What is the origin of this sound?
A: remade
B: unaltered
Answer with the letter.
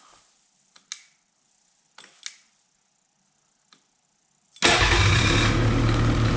B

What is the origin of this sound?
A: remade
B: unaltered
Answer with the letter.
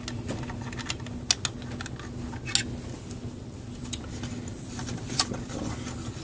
B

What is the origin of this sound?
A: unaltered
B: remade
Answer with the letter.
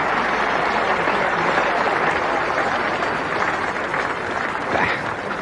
A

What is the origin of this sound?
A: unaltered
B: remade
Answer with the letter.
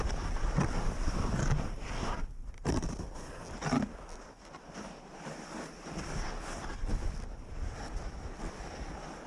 A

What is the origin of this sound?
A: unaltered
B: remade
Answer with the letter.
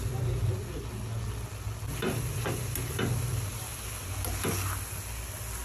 A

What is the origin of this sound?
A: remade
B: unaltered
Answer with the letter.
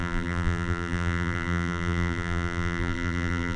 A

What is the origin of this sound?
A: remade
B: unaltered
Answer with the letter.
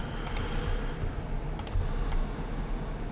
B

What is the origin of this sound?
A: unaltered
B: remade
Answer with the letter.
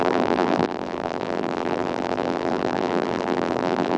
B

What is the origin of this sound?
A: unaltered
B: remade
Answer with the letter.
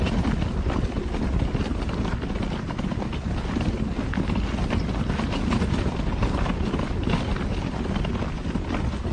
A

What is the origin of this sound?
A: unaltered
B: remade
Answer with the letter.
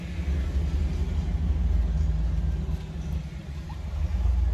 A